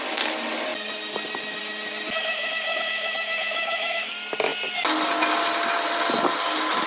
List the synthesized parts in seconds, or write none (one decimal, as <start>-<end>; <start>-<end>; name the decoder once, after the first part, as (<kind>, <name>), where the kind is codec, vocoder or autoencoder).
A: 2.3-4.1 (autoencoder, DAC-VAE)